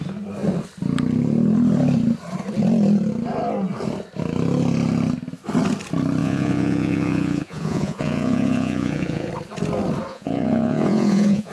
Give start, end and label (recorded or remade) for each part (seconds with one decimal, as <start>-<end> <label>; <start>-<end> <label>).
0.0-6.2 recorded; 6.2-9.3 remade; 9.3-10.1 recorded; 10.1-11.5 remade

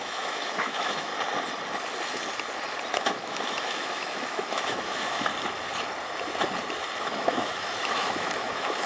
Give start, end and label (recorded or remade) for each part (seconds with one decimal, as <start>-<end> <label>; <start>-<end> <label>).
0.0-1.1 remade; 1.1-2.9 recorded; 2.9-5.3 remade; 5.3-7.0 recorded; 7.0-8.9 remade

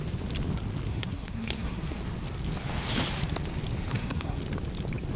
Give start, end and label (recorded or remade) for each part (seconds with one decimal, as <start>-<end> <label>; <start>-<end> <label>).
0.0-0.9 recorded; 0.9-2.0 remade; 2.0-3.9 recorded; 3.9-4.4 remade; 4.4-5.2 recorded

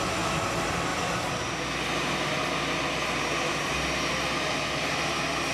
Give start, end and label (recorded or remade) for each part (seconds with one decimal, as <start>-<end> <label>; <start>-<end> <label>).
0.0-5.5 recorded

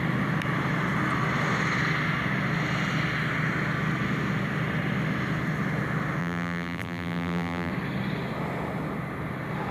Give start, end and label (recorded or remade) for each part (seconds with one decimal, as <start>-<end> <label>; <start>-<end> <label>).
0.0-6.2 recorded; 6.2-7.7 remade; 7.7-9.7 recorded

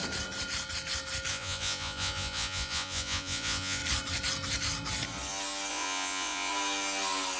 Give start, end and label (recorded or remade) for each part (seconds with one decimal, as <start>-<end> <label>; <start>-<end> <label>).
0.0-1.3 recorded; 1.3-3.8 remade; 3.8-5.7 recorded; 5.7-6.5 remade; 6.5-7.4 recorded

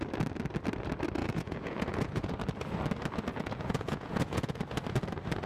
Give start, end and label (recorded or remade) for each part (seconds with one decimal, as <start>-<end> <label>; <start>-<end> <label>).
0.0-1.2 recorded; 1.2-2.3 remade; 2.3-3.3 recorded; 3.3-4.6 remade; 4.6-5.5 recorded

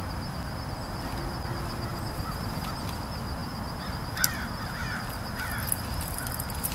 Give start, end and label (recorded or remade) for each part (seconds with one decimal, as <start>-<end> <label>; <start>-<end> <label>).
0.0-1.9 recorded; 1.9-2.7 remade; 2.7-3.4 recorded; 3.4-4.8 remade; 4.8-6.7 recorded